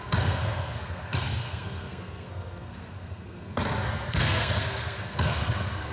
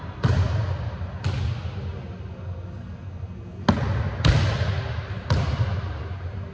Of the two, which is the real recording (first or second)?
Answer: second